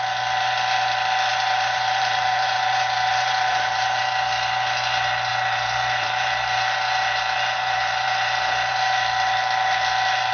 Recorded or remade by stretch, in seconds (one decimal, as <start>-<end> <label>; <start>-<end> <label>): 0.0-1.3 recorded; 1.3-4.0 remade; 4.0-5.3 recorded; 5.3-8.8 remade; 8.8-10.3 recorded